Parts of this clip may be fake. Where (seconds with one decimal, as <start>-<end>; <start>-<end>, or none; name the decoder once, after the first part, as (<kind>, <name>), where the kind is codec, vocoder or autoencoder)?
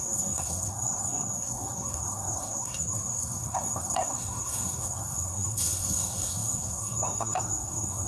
0.0-8.1 (codec, SNAC)